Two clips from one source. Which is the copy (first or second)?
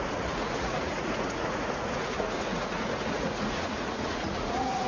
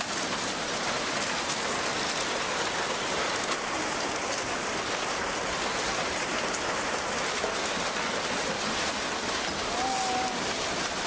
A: first